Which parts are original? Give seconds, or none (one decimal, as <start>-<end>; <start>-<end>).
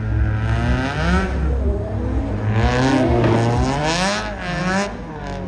0.0-5.5